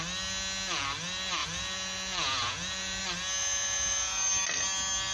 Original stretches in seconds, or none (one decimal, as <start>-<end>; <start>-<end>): 0.0-1.4; 3.0-3.4; 4.3-5.1